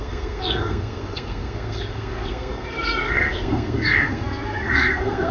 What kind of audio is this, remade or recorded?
remade